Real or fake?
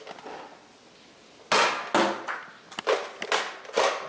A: real